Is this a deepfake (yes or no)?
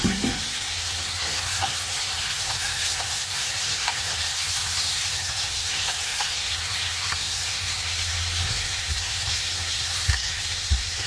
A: yes